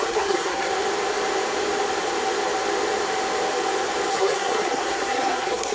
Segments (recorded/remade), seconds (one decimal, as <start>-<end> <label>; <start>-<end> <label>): 0.0-0.7 remade; 0.7-4.1 recorded; 4.1-5.7 remade